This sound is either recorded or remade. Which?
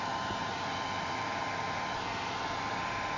recorded